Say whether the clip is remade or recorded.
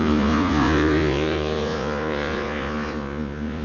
remade